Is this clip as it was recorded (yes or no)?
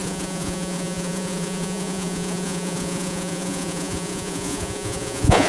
no